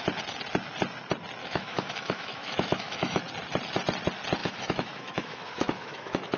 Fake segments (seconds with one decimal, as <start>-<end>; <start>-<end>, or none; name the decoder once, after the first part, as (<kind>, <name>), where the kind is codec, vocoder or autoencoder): 1.4-3.2 (autoencoder, DAC-VAE); 4.4-6.4